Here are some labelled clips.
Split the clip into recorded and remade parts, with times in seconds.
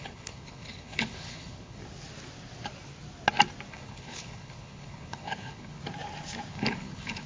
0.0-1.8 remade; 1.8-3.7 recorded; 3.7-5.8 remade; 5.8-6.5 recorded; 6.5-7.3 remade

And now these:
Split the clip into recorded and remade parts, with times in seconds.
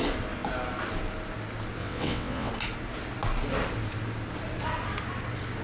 0.0-1.8 recorded; 1.8-2.5 remade; 2.5-5.6 recorded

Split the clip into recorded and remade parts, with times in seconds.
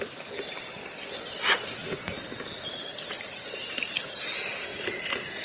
0.0-5.4 recorded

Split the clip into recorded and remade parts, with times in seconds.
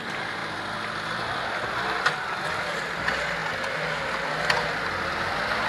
0.0-5.7 recorded